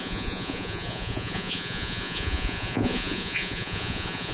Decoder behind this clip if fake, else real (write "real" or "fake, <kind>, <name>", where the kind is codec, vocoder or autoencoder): fake, vocoder, Vocos